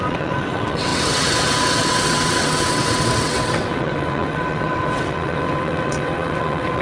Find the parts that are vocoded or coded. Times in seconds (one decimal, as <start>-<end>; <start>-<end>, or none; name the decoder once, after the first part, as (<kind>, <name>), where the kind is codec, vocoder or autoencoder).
0.0-6.8 (vocoder, WaveNeXt)